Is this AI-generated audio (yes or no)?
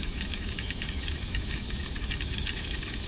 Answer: yes